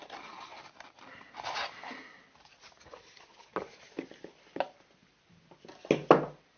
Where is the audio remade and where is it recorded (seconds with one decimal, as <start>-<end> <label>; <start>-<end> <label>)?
0.0-6.6 recorded